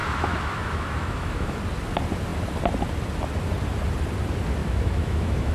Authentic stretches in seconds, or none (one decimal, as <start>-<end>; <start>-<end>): 1.6-4.6